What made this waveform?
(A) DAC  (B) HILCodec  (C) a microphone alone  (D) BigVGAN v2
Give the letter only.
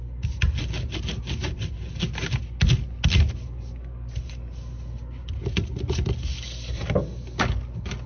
C